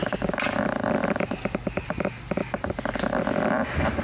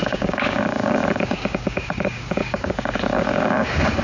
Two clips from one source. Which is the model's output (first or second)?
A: second